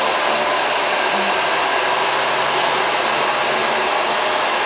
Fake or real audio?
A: real